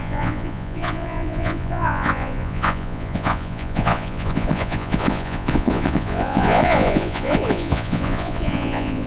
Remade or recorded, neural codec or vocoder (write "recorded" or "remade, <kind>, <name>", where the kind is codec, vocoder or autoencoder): remade, vocoder, Vocos